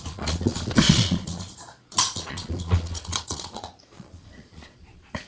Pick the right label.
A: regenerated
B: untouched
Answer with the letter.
A